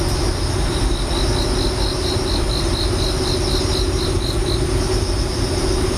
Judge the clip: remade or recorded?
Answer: recorded